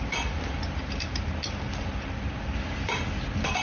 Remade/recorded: remade